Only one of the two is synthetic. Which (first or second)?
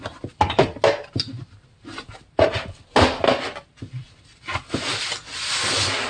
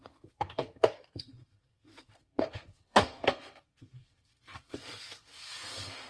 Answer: second